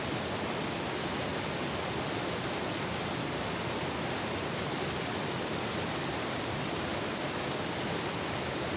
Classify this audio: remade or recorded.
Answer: recorded